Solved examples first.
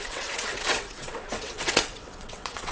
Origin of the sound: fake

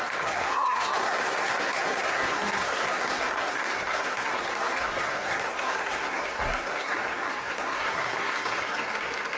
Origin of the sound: fake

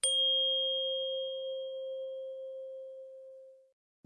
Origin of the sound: real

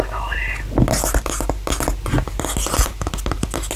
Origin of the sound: real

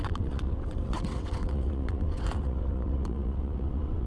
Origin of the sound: fake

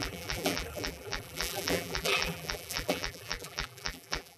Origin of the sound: fake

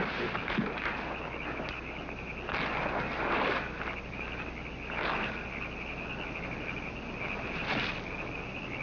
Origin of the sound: real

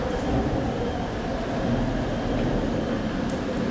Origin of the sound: real